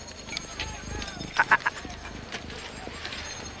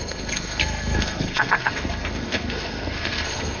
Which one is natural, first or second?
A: first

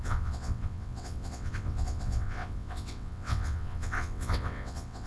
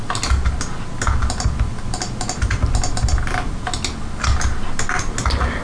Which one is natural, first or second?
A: second